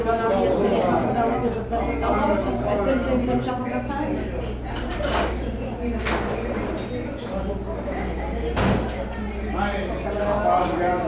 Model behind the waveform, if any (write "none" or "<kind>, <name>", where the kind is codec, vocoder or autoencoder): none